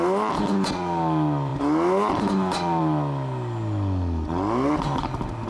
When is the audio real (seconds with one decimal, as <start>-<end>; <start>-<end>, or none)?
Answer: 0.0-5.5